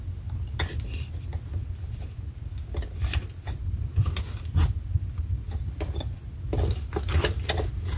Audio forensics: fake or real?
real